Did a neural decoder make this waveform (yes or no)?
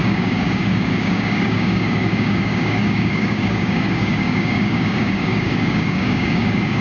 yes